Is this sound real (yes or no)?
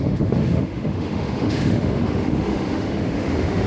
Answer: no